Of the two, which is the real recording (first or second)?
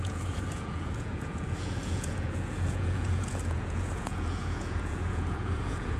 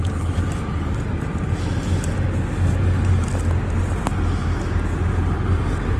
second